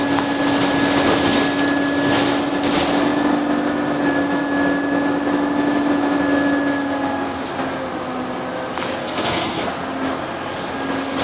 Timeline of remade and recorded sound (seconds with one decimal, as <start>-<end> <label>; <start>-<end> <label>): 0.0-9.0 recorded; 9.0-9.7 remade; 9.7-11.2 recorded